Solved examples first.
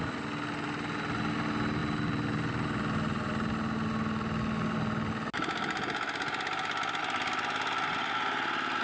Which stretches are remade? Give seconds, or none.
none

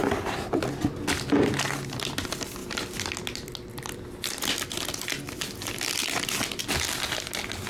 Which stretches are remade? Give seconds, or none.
none